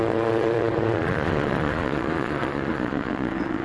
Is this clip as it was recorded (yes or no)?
no